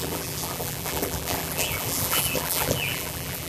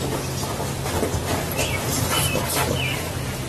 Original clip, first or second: second